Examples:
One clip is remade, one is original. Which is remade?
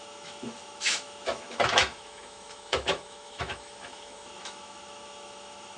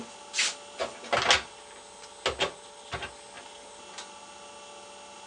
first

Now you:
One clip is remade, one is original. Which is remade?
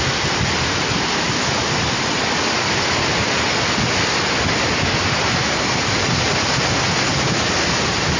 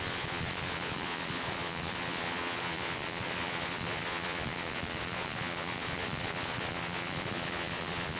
second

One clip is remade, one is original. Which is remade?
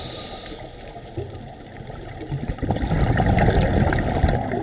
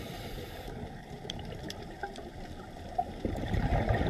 second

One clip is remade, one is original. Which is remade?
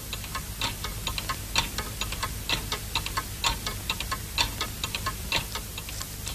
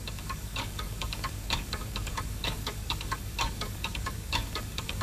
second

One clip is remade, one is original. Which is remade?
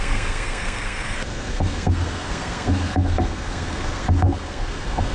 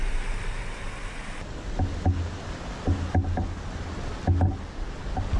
first